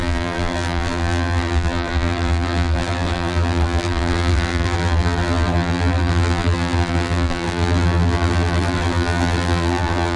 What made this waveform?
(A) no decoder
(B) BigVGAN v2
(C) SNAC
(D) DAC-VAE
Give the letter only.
B